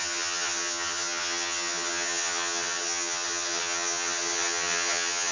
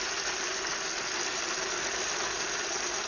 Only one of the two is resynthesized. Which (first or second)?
first